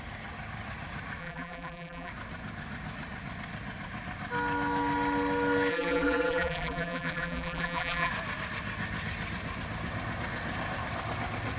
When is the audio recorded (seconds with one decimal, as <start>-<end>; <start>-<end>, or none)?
0.0-1.2; 2.1-5.7; 8.1-11.6